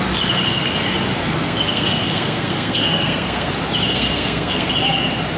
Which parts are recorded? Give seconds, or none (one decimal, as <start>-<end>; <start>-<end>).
0.0-1.2; 3.5-3.9; 4.7-5.4

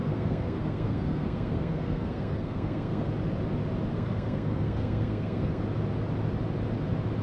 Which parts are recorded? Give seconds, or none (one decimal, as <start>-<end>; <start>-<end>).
3.1-3.9; 5.6-7.2

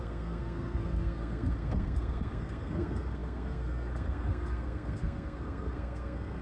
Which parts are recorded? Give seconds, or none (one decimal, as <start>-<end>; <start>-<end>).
none

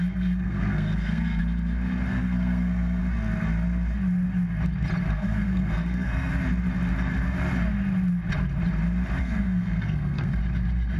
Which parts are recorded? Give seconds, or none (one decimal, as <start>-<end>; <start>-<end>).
1.4-2.1; 3.0-5.1; 6.3-9.2; 10.4-11.0

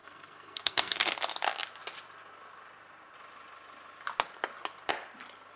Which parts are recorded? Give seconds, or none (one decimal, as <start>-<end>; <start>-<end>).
1.1-5.6

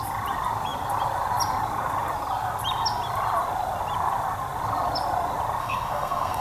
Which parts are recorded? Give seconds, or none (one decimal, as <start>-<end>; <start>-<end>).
0.0-5.6

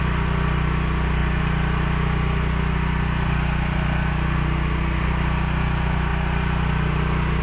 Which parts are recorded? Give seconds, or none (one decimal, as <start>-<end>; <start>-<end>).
0.0-7.4

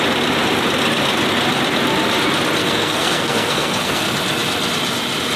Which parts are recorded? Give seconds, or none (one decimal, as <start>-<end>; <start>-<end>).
0.0-2.6; 4.0-5.4